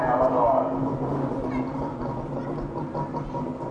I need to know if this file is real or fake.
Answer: real